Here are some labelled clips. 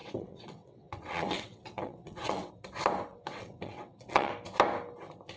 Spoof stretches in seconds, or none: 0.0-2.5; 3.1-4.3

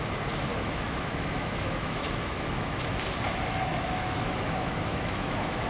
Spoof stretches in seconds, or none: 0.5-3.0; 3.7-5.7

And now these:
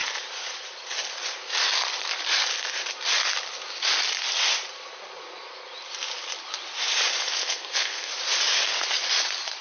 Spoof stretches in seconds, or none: 7.4-8.1

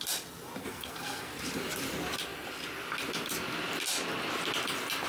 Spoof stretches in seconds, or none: 0.6-1.4

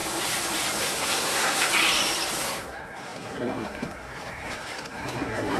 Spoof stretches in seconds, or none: 0.8-1.7; 2.4-5.6

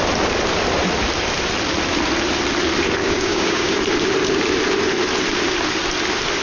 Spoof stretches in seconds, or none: 3.0-3.8